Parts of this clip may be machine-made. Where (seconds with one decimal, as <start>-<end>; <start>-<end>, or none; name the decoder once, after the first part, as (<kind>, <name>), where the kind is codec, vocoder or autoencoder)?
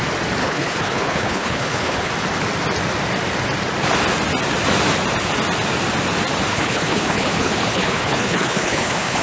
0.4-2.1 (codec, HILCodec); 6.5-9.2